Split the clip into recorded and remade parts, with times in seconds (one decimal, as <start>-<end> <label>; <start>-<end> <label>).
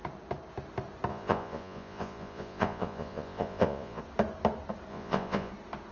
0.0-1.1 recorded; 1.1-4.0 remade; 4.0-4.9 recorded; 4.9-5.5 remade; 5.5-5.9 recorded